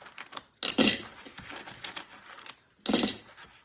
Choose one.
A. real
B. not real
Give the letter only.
A